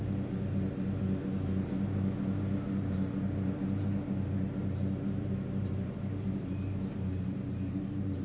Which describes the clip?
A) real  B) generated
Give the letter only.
B